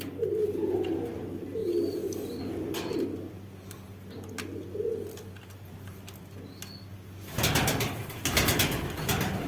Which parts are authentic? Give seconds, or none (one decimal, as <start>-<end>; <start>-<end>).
0.0-9.5